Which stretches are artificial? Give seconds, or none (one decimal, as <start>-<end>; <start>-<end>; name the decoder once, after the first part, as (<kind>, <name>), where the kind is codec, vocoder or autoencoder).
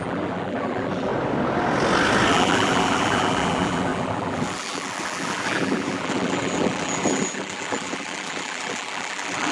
0.0-1.1 (vocoder, BigVGAN v2); 2.3-9.5